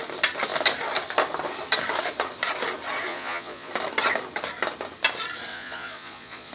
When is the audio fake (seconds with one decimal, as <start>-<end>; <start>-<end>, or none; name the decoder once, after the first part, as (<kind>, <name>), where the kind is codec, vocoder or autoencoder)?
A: 3.1-3.7 (vocoder, Vocos); 5.5-6.5